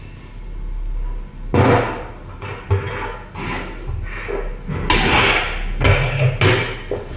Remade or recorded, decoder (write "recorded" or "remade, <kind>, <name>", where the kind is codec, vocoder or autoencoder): recorded